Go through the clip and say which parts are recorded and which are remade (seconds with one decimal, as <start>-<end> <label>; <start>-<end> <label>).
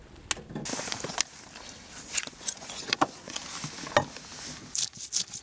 0.0-2.1 recorded; 2.1-3.4 remade; 3.4-5.4 recorded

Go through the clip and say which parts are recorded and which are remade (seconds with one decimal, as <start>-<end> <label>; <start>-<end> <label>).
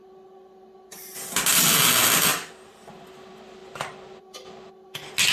0.0-5.3 recorded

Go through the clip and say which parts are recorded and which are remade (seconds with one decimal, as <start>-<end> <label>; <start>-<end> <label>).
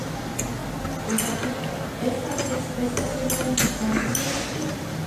0.0-5.1 recorded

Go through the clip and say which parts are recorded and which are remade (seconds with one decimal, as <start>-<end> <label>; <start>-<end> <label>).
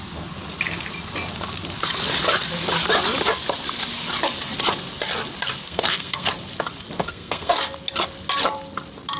0.0-5.6 recorded; 5.6-6.3 remade; 6.3-7.0 recorded; 7.0-7.5 remade; 7.5-9.2 recorded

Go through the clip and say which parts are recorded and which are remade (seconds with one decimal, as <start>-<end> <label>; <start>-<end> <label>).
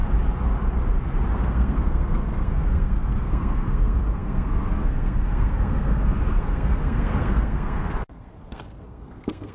0.0-1.4 recorded; 1.4-9.5 remade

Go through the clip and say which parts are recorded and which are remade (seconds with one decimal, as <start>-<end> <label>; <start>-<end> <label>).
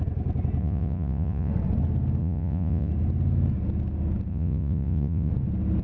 0.0-0.6 recorded; 0.6-1.5 remade; 1.5-2.2 recorded; 2.2-2.9 remade; 2.9-4.3 recorded; 4.3-5.3 remade; 5.3-5.8 recorded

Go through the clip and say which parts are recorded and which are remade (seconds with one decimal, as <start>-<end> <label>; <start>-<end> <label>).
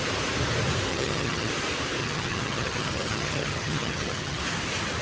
0.0-0.9 recorded; 0.9-1.5 remade; 1.5-2.0 recorded; 2.0-4.4 remade; 4.4-5.0 recorded